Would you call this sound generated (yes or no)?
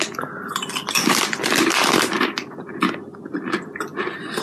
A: no